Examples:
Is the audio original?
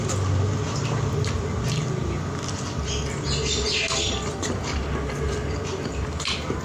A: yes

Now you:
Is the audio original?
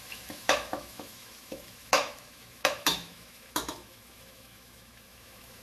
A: no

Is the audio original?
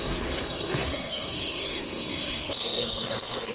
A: no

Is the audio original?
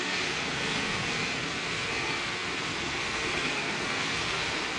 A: no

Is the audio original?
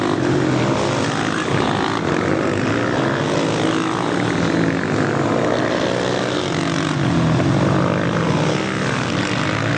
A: yes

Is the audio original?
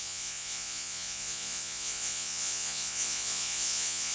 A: no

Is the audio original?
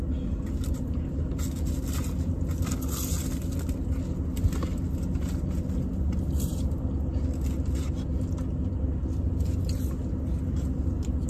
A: yes